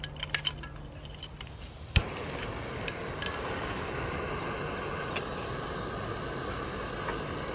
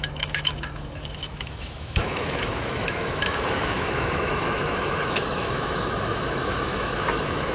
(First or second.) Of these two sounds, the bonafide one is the first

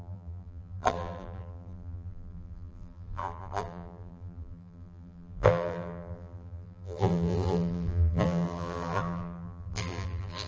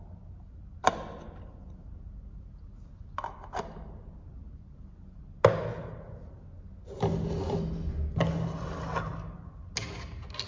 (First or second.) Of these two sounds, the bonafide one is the second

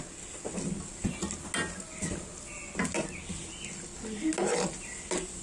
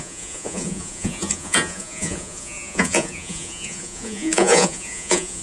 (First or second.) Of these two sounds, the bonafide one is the first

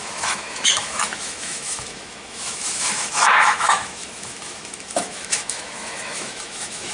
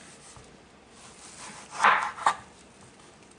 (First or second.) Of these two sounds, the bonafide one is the second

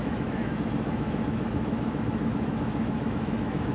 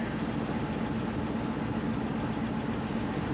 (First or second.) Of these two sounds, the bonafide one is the second